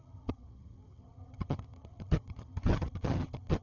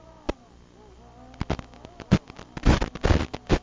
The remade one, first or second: first